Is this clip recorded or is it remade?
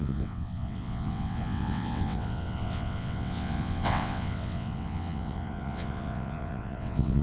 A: remade